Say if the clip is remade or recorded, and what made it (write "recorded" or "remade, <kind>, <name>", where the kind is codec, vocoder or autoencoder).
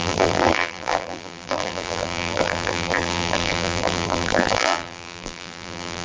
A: remade, vocoder, BigVGAN v2